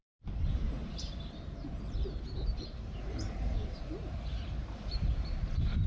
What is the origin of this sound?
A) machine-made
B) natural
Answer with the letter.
A